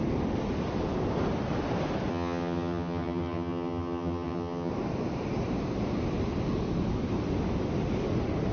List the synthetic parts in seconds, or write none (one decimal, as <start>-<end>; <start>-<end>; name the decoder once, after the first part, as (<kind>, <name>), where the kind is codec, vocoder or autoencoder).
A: 2.1-4.7 (vocoder, HiFi-GAN)